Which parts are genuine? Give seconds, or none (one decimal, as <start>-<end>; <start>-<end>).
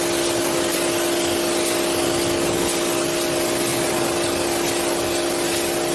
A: 0.0-5.9